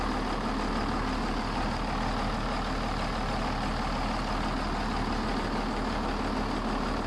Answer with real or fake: real